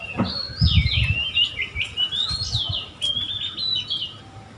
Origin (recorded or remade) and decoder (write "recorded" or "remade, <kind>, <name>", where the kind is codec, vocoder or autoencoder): recorded